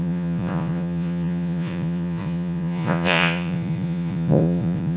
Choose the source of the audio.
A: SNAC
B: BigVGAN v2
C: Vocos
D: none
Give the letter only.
C